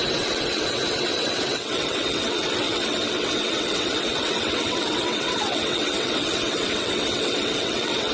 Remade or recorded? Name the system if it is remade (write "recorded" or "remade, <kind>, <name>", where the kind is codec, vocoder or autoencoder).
remade, vocoder, WaveNeXt